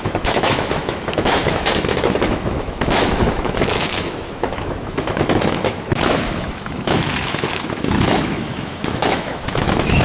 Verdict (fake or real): fake